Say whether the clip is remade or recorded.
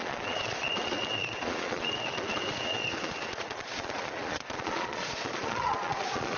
remade